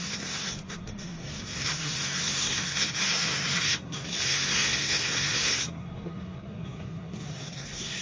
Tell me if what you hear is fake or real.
fake